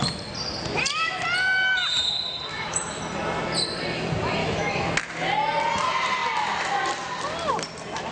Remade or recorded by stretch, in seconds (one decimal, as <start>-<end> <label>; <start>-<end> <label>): 0.0-2.5 recorded; 2.5-3.0 remade; 3.0-4.4 recorded; 4.4-4.9 remade; 4.9-8.1 recorded